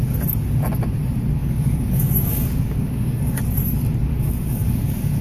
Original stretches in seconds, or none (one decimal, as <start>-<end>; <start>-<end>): 0.0-1.4; 3.4-4.1